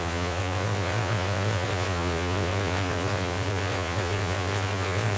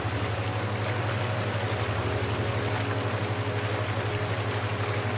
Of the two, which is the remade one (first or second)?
first